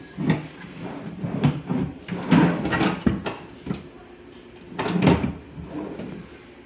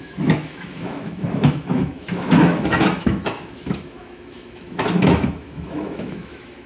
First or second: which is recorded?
first